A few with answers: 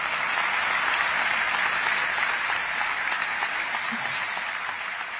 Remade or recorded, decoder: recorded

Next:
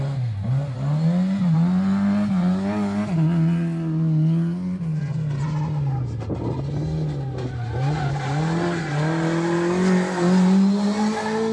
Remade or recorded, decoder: recorded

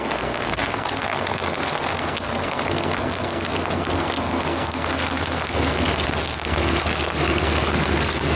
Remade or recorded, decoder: remade, codec, SNAC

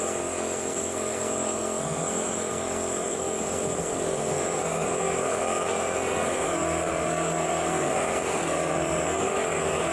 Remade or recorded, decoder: remade, codec, SNAC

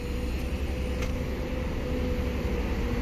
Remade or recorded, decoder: recorded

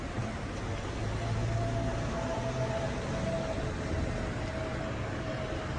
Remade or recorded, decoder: recorded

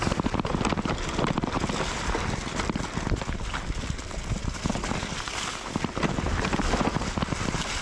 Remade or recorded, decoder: recorded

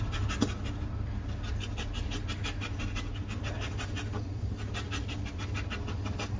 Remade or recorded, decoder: recorded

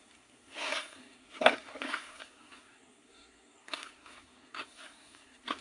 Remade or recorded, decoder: remade, codec, SNAC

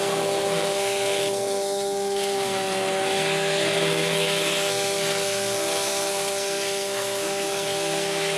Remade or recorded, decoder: remade, codec, SNAC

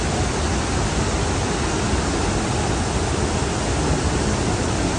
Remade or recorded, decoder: recorded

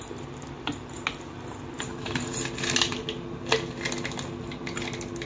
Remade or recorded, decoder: recorded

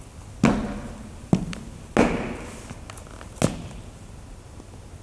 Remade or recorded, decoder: recorded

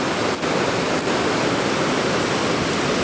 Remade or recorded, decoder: recorded